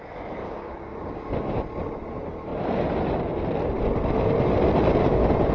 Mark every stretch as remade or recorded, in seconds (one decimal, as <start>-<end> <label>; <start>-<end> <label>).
0.0-0.4 recorded; 0.4-1.3 remade; 1.3-5.5 recorded